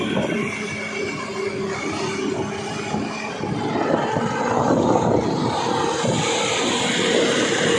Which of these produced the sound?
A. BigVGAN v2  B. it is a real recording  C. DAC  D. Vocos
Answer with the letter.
B